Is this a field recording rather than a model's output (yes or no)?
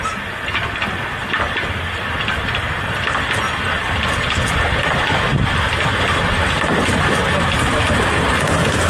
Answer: yes